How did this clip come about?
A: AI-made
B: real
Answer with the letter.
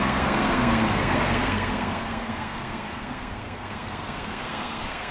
A